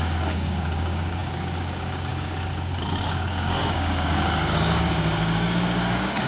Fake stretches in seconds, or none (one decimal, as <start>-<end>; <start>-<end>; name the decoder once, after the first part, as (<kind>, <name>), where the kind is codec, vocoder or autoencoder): 0.0-6.3 (codec, DAC)

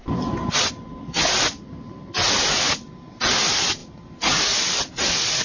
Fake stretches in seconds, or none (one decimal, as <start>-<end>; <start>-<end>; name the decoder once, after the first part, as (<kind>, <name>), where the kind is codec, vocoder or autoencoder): none

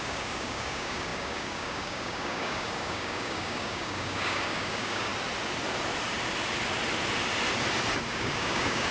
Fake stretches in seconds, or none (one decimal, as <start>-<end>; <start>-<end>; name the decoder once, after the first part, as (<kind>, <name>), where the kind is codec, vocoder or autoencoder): 0.0-5.1 (codec, DAC); 8.1-8.9

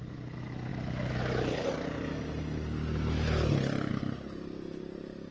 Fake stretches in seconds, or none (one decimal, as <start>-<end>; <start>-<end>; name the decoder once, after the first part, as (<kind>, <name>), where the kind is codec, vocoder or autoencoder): none

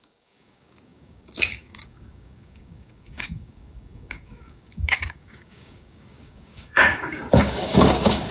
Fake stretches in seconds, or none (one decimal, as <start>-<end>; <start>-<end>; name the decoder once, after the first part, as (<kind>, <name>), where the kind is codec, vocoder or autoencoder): 0.0-8.3 (codec, DAC)